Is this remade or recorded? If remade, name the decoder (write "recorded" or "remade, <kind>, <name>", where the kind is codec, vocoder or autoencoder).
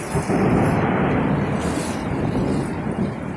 recorded